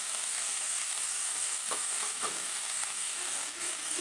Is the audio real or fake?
fake